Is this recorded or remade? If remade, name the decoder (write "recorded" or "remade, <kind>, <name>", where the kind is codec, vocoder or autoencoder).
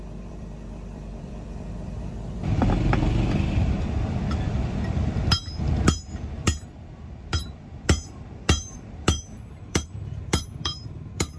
remade, vocoder, BigVGAN v2